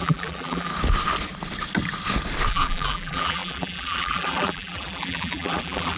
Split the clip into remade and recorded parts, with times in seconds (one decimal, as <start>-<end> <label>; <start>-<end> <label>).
0.0-0.7 remade; 0.7-2.5 recorded; 2.5-6.0 remade